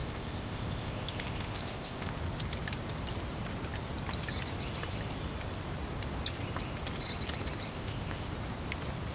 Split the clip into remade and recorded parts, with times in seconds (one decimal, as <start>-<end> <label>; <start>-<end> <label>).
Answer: 0.0-2.1 remade; 2.1-7.7 recorded; 7.7-8.3 remade; 8.3-9.1 recorded